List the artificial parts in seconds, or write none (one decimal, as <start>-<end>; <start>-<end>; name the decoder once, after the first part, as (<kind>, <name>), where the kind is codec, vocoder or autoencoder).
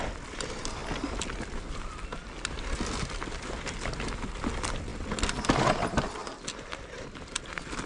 none